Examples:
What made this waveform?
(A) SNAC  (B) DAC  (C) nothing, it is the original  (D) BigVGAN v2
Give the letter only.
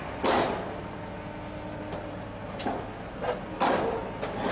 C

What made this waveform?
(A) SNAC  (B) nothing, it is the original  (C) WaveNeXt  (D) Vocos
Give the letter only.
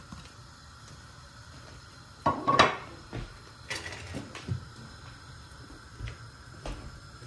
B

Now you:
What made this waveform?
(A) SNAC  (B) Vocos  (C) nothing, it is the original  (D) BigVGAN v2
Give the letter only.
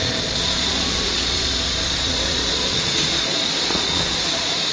B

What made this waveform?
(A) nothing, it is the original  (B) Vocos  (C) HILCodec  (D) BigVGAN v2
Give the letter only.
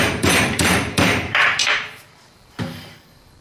D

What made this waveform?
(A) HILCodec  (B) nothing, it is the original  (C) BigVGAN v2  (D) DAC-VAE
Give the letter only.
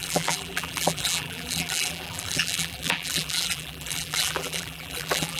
C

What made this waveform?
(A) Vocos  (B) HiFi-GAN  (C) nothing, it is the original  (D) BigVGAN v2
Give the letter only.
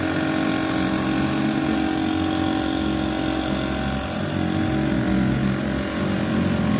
C